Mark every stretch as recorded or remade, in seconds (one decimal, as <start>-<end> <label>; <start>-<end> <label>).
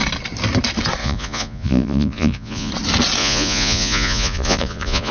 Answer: 0.0-1.0 recorded; 1.0-2.7 remade; 2.7-3.2 recorded; 3.2-5.1 remade